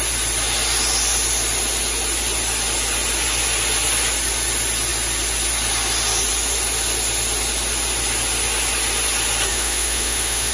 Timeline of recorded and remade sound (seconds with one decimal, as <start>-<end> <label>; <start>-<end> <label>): 0.0-9.5 recorded; 9.5-10.5 remade